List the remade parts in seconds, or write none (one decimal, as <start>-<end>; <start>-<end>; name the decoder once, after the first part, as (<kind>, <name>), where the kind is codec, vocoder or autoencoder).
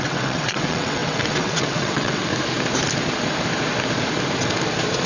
0.0-2.3 (vocoder, WaveNeXt)